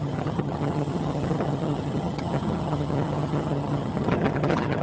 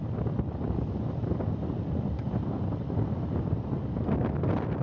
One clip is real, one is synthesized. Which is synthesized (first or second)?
first